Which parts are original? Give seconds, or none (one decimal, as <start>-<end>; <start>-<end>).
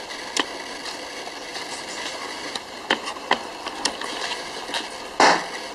0.0-1.5; 3.5-5.7